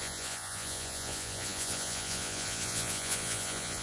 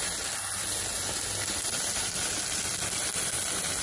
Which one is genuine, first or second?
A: second